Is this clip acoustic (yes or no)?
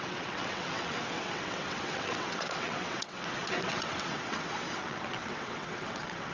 no